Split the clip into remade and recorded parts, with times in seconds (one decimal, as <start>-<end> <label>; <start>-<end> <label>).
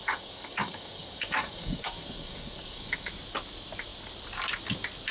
0.0-3.1 remade; 3.1-5.1 recorded